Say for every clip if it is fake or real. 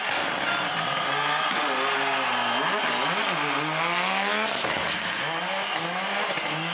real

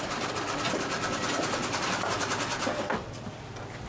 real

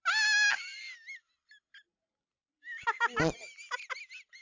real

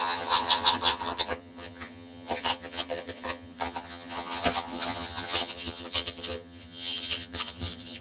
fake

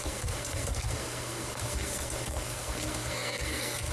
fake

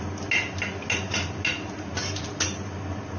real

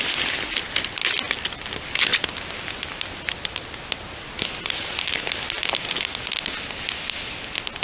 real